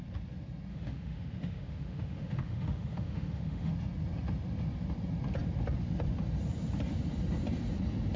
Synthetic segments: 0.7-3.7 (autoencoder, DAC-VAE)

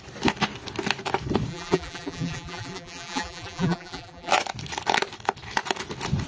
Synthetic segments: 1.5-4.3 (vocoder, BigVGAN v2)

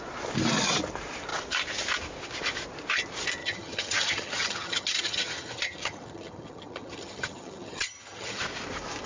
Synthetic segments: 3.4-8.4 (vocoder, HiFi-GAN)

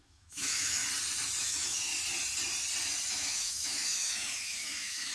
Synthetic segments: 0.0-0.8 (autoencoder, DAC-VAE); 1.4-1.9; 3.1-5.1

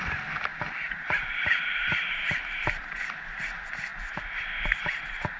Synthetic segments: 0.5-3.4 (vocoder, BigVGAN v2)